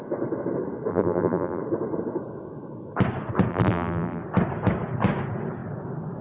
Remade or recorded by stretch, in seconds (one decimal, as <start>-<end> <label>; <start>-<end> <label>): 0.0-0.9 recorded; 0.9-1.6 remade; 1.6-3.5 recorded; 3.5-4.2 remade; 4.2-6.2 recorded